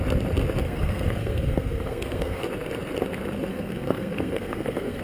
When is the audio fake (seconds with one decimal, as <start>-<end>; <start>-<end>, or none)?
0.6-2.4; 3.5-5.0